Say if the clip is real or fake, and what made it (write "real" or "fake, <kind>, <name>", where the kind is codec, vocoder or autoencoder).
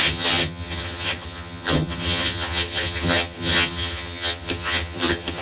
fake, vocoder, HiFi-GAN